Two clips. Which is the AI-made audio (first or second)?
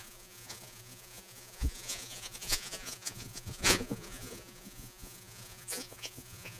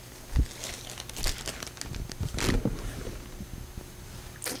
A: first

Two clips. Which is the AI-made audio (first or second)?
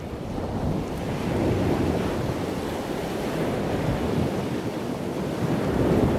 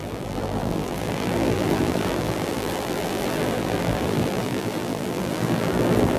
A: second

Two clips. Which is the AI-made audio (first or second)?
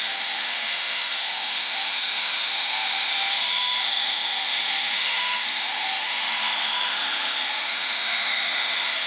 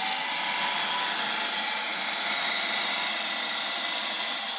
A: first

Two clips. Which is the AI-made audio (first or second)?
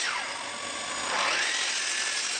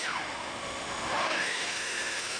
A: second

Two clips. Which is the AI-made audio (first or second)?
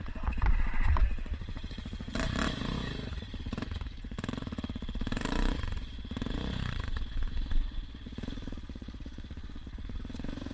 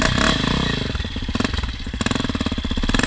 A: first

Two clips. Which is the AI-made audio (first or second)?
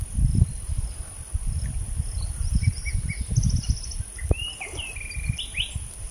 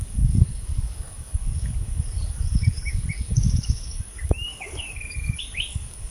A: second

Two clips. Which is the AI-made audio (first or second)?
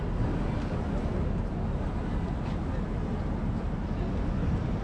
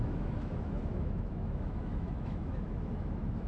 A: second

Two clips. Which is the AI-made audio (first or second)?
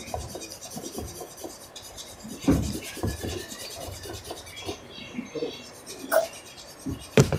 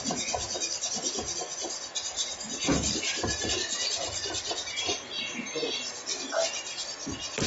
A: first